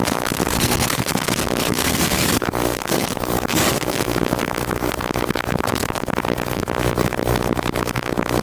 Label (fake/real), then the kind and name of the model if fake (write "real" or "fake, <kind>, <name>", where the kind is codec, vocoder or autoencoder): fake, codec, SNAC